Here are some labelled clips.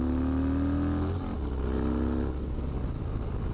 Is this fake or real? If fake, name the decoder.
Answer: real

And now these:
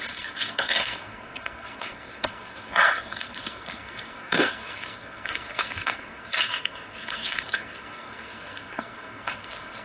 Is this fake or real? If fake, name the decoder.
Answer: fake, codec, SNAC